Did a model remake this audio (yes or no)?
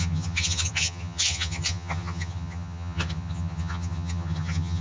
yes